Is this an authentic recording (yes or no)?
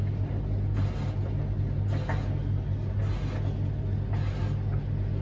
yes